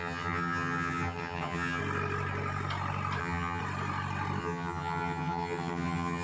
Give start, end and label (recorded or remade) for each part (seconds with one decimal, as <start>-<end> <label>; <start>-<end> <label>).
0.0-1.8 remade; 1.8-3.2 recorded; 3.2-3.6 remade; 3.6-4.4 recorded; 4.4-6.2 remade